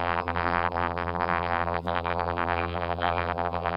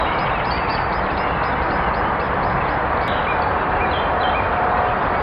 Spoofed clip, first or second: first